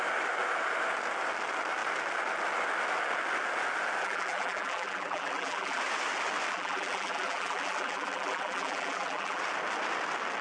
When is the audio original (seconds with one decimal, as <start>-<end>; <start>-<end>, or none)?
0.0-4.0; 5.8-6.5; 9.4-10.4